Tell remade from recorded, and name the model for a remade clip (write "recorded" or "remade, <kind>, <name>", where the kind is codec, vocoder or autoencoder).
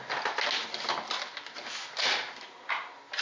recorded